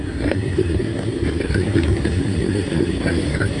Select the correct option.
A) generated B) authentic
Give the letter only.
A